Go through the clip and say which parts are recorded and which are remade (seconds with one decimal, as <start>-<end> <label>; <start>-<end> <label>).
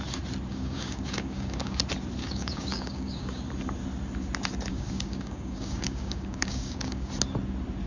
0.0-0.5 recorded; 0.5-1.8 remade; 1.8-2.2 recorded; 2.2-3.4 remade; 3.4-4.7 recorded; 4.7-7.1 remade; 7.1-7.9 recorded